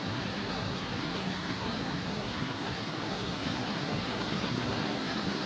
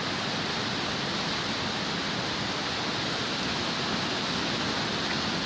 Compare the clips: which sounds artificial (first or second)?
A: first